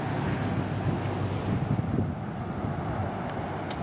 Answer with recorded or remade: recorded